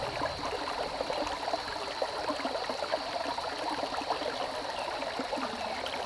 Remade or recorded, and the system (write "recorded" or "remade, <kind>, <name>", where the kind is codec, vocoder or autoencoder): recorded